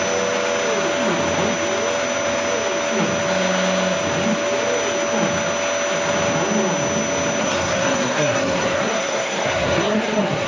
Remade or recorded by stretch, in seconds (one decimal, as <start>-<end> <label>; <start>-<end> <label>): 0.0-7.4 recorded; 7.4-10.5 remade